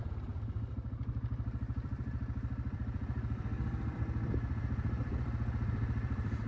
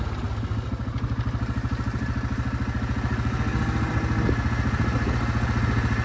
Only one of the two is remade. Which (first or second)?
first